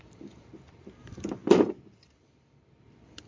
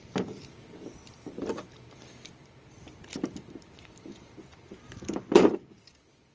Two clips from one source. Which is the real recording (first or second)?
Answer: second